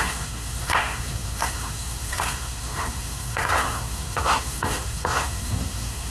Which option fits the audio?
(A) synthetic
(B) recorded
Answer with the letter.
A